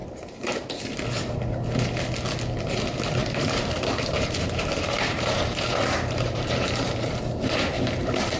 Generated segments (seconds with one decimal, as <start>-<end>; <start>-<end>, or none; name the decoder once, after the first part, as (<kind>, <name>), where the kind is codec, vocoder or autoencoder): 0.0-0.7 (vocoder, BigVGAN v2); 3.2-8.4

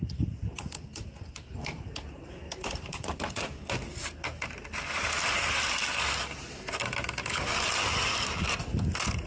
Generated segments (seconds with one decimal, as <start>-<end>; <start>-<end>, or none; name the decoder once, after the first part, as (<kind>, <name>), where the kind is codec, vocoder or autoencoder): none

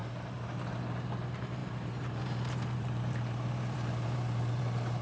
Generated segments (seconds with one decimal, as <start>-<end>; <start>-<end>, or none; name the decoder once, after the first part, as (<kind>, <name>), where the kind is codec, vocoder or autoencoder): 0.0-0.6 (vocoder, BigVGAN v2); 1.6-4.6

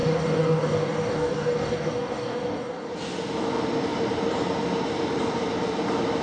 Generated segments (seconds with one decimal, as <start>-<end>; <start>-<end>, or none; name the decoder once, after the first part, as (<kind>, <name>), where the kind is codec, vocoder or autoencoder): 0.0-2.9 (codec, DAC)